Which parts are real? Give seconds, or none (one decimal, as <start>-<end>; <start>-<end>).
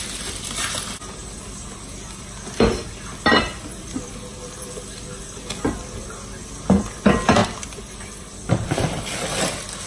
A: 0.0-3.5; 4.7-7.4; 8.8-9.9